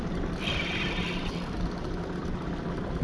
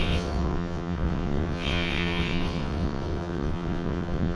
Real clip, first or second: first